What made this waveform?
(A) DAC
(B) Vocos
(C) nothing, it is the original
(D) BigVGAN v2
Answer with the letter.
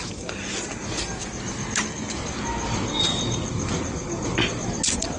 C